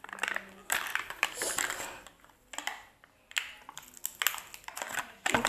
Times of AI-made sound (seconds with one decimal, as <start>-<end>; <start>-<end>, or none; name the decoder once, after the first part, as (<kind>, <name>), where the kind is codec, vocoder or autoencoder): 0.9-1.6 (vocoder, BigVGAN v2)